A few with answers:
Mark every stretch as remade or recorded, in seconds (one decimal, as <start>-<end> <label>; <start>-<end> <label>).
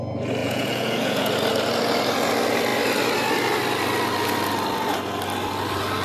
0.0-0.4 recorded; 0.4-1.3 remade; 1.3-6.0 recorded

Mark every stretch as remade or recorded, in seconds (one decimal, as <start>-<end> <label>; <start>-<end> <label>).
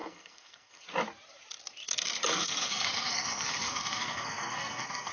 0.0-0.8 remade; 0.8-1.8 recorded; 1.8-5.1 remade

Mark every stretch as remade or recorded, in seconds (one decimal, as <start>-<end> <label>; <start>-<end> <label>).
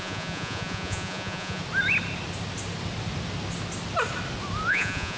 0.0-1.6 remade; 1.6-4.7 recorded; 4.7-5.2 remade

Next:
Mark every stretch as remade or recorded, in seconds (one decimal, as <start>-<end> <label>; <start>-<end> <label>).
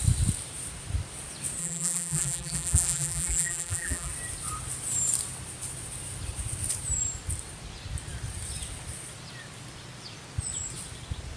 0.0-1.6 recorded; 1.6-4.1 remade; 4.1-11.4 recorded